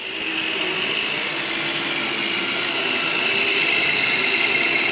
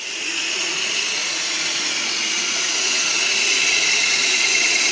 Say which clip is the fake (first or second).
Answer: second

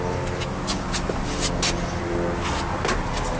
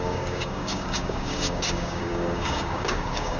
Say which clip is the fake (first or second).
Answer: second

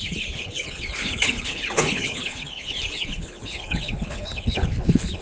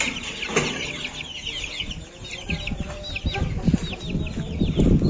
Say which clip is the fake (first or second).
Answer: first